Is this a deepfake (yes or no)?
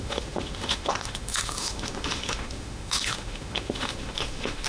yes